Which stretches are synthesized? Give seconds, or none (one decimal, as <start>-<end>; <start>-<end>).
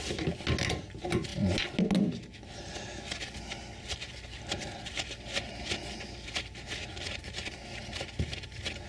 none